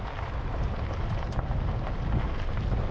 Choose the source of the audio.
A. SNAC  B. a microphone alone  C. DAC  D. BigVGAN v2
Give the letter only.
B